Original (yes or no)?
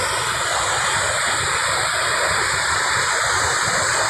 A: yes